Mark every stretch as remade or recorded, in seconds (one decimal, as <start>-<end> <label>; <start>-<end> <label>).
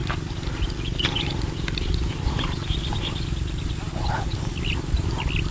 0.0-3.9 recorded; 3.9-4.6 remade; 4.6-5.5 recorded